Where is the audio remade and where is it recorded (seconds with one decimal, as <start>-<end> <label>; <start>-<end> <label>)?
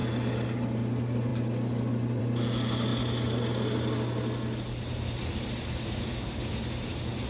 0.0-7.3 recorded